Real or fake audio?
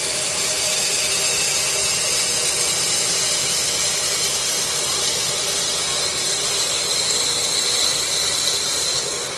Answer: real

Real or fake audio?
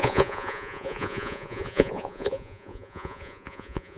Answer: fake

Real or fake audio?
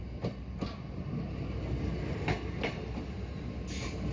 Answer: real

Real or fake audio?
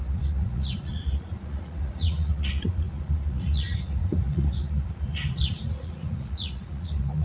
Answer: fake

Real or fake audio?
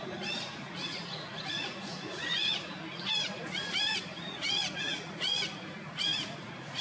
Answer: fake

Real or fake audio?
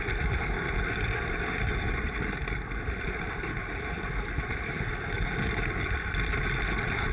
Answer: real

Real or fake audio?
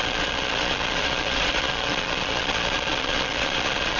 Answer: fake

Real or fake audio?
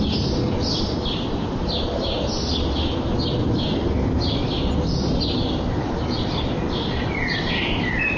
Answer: real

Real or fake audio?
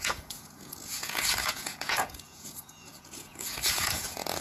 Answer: fake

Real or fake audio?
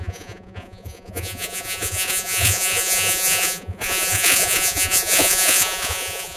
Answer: fake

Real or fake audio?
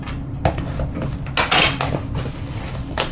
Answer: real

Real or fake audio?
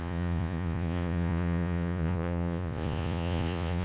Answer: fake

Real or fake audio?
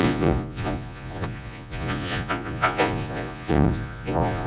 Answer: fake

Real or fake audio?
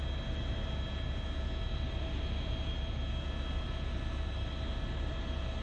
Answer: real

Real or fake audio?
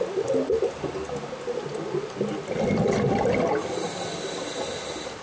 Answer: real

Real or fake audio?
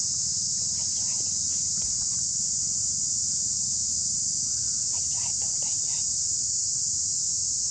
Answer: real